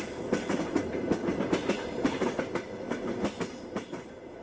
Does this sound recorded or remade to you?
recorded